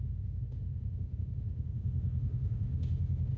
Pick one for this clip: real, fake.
fake